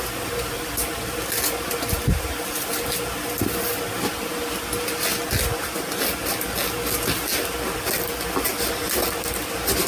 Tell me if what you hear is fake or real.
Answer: real